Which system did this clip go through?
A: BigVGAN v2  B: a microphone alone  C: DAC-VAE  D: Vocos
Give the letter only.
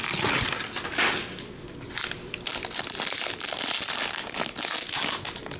B